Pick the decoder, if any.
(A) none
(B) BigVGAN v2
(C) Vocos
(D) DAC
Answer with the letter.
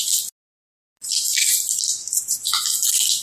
A